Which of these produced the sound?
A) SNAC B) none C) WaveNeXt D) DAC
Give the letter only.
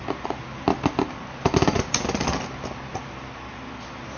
B